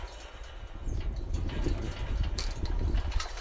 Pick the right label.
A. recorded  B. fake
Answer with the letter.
B